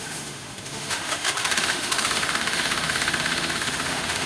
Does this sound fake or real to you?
fake